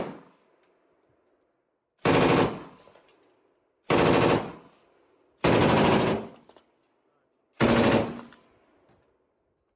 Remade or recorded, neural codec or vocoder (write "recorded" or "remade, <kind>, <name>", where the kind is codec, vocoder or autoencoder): recorded